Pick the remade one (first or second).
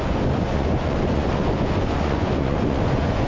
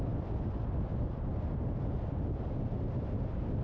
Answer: first